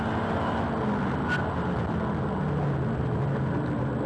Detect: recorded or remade recorded